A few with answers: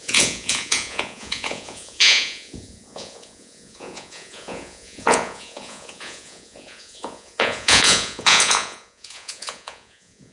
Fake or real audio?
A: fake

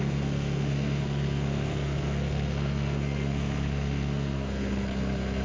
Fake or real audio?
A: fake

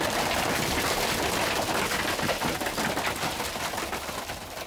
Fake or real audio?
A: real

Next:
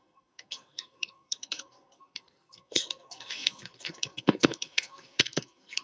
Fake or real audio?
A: fake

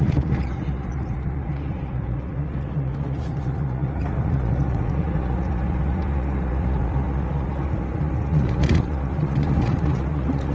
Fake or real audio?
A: fake